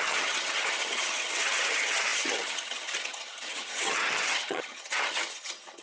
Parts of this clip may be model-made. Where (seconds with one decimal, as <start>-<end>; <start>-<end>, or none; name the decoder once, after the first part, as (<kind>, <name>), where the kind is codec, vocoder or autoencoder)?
0.0-5.8 (vocoder, HiFi-GAN)